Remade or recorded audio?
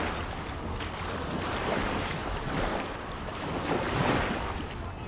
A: recorded